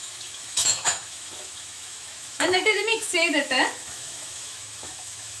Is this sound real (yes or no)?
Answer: no